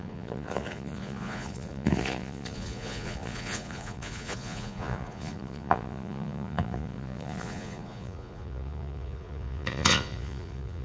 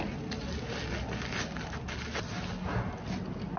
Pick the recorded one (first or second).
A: second